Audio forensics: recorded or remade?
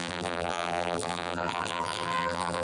remade